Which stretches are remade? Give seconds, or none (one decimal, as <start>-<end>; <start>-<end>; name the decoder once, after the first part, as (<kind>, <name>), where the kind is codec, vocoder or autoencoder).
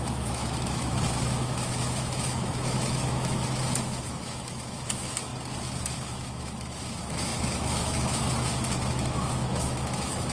0.0-5.3 (autoencoder, DAC-VAE); 5.8-10.3